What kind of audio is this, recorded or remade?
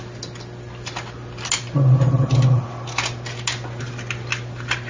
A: recorded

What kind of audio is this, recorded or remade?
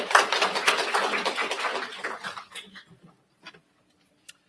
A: recorded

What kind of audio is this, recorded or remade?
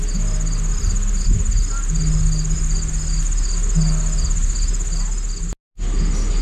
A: recorded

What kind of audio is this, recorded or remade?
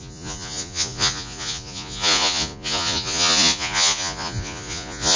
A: remade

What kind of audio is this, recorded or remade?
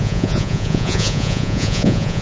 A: remade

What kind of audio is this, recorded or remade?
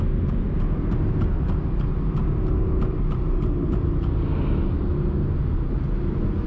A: recorded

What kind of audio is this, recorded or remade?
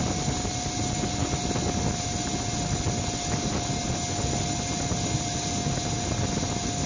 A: recorded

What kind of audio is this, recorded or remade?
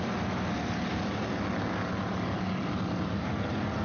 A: recorded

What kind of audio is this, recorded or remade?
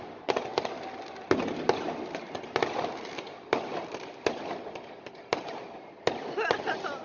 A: recorded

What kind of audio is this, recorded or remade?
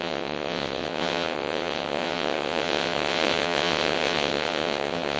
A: remade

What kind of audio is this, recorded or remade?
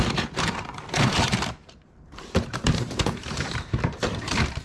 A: remade